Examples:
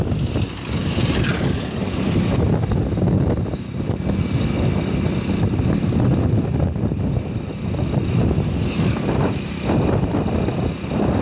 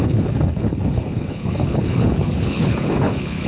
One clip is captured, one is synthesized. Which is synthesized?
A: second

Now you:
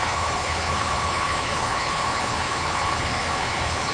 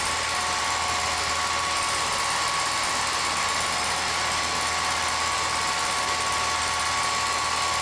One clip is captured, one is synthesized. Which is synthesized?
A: first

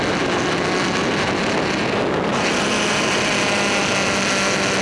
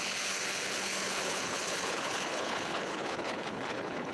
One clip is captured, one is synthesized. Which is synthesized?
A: second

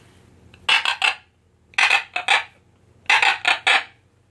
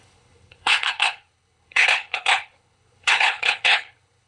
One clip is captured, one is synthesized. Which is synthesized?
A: second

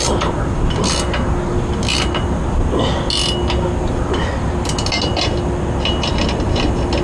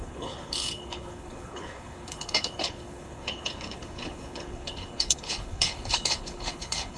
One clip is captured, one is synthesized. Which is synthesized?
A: second